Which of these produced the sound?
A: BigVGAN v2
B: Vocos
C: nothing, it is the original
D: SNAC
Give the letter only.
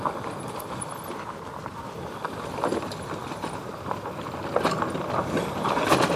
C